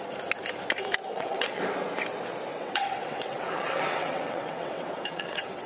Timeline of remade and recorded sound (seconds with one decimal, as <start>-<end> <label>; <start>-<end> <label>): 0.0-1.1 recorded; 1.1-1.6 remade; 1.6-2.5 recorded; 2.5-5.7 remade